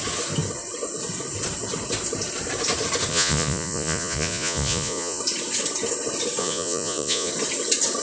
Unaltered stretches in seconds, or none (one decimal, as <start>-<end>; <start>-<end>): 0.0-3.1; 5.2-6.4; 7.3-8.0